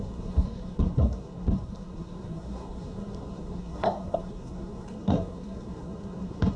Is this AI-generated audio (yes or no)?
yes